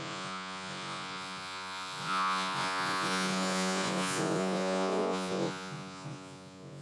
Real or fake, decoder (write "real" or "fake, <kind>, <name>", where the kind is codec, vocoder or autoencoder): fake, vocoder, Vocos